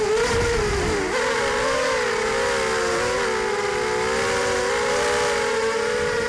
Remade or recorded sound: recorded